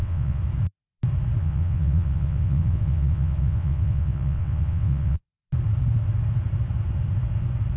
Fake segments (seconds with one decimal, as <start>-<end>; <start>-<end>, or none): 0.0-0.4; 1.4-5.3

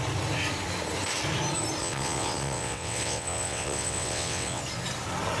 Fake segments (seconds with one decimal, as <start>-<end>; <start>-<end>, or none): 1.8-4.6

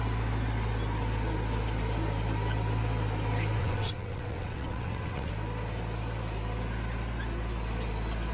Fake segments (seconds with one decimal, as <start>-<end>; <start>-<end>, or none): 3.6-5.3

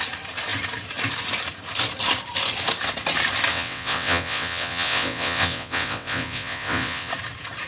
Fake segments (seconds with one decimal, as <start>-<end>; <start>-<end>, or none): 3.5-7.1

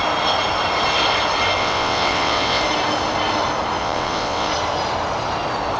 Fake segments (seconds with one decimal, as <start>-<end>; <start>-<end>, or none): 1.6-2.6; 3.8-4.5